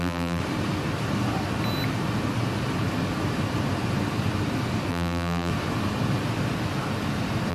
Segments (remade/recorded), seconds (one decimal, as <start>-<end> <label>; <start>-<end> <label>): 0.0-0.4 remade; 0.4-4.9 recorded; 4.9-5.5 remade; 5.5-7.5 recorded